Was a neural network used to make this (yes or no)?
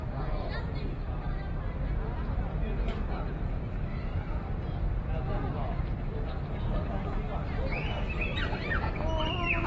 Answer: yes